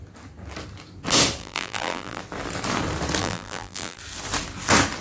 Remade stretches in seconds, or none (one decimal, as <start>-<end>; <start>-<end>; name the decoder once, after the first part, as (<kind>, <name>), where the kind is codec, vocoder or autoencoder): 1.4-2.2 (vocoder, BigVGAN v2); 3.2-4.0